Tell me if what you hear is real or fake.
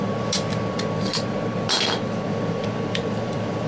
fake